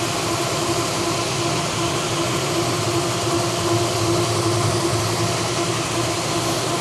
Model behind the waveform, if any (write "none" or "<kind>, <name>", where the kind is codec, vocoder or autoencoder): none